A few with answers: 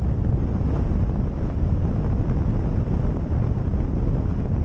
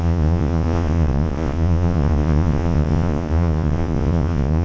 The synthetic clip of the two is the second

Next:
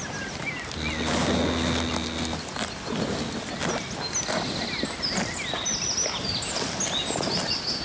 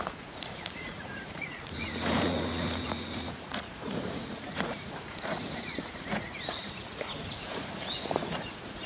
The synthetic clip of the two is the second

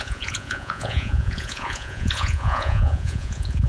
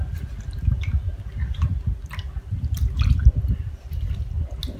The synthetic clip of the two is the first